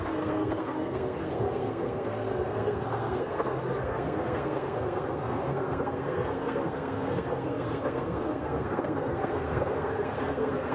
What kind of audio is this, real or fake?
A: fake